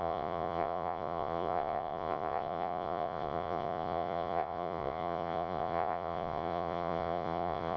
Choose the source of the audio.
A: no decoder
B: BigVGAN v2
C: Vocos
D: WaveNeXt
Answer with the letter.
C